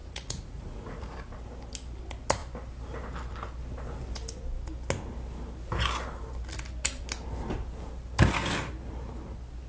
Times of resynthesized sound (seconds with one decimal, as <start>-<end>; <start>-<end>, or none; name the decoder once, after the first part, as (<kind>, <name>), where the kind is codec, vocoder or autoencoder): 0.0-1.0 (vocoder, Vocos)